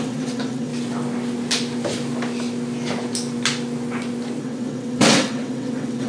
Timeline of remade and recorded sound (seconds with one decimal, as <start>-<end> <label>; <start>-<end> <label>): 0.0-0.7 remade; 0.7-4.4 recorded; 4.4-6.1 remade